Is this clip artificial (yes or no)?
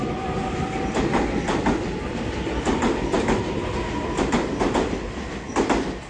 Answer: no